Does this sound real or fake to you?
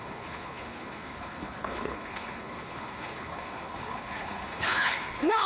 fake